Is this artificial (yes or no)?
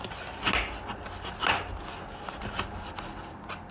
no